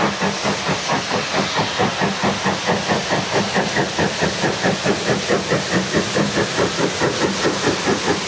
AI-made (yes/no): no